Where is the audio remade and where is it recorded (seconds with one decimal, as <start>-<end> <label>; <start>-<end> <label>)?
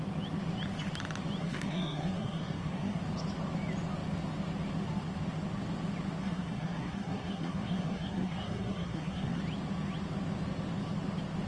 0.0-1.4 recorded; 1.4-3.0 remade; 3.0-6.2 recorded; 6.2-9.4 remade; 9.4-11.5 recorded